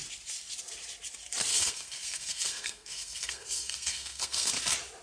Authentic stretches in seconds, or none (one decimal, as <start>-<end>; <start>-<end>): 0.0-1.5; 4.5-5.0